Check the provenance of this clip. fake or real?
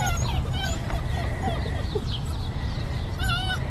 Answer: real